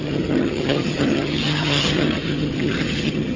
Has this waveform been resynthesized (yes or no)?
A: yes